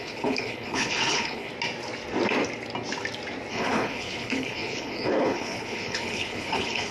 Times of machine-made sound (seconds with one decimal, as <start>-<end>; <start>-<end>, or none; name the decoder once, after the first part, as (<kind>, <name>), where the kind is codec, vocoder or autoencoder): 0.0-1.5 (codec, HILCodec); 3.5-6.9